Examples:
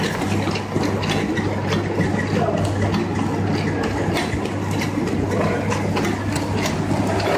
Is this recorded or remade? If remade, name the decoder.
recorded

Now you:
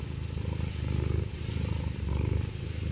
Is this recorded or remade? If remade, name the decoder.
recorded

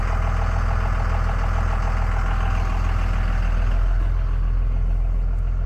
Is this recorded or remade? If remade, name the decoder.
recorded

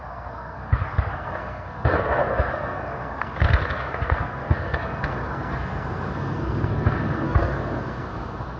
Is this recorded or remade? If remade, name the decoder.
remade, codec, SNAC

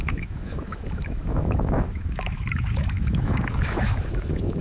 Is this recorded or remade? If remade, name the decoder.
remade, autoencoder, DAC-VAE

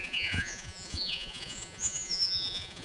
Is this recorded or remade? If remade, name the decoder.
remade, vocoder, Vocos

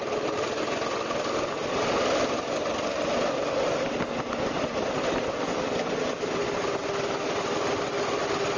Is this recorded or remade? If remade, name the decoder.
recorded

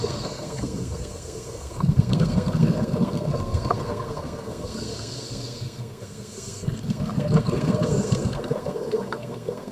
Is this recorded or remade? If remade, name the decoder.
remade, codec, SNAC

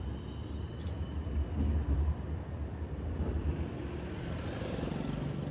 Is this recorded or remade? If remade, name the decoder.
recorded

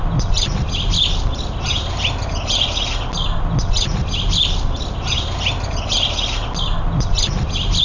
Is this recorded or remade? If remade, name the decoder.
recorded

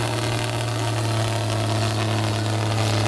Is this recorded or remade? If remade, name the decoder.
recorded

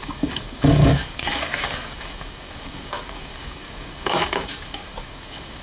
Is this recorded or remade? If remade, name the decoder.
remade, codec, DAC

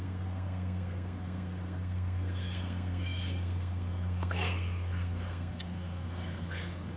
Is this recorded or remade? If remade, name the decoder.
remade, codec, SNAC